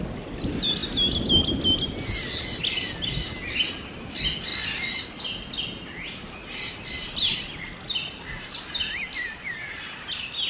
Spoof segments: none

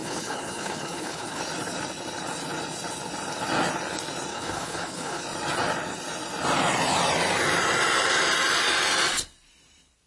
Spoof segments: 0.0-1.4 (codec, HILCodec); 4.3-5.2